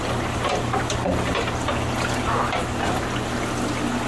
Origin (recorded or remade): recorded